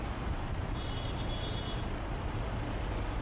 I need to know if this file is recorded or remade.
recorded